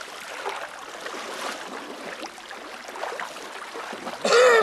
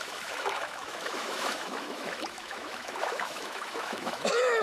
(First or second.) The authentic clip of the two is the first